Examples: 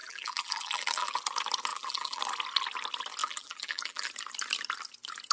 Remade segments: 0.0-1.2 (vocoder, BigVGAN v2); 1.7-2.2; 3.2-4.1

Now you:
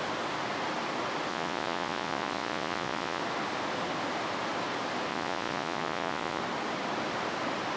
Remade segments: 1.3-3.2 (vocoder, Vocos); 5.1-6.4

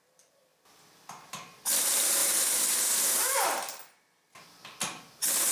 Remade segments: 0.0-0.5 (vocoder, BigVGAN v2); 1.8-3.8; 5.0-5.5

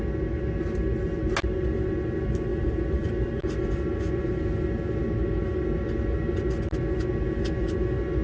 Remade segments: 2.5-3.3 (vocoder, BigVGAN v2)

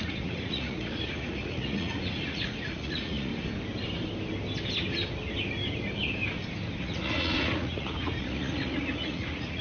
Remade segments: 0.0-3.3 (vocoder, Vocos); 6.8-9.6